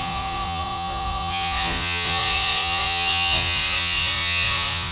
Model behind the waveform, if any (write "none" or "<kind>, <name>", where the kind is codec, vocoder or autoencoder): vocoder, Vocos